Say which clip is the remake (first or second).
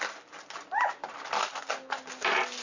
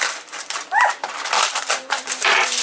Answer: second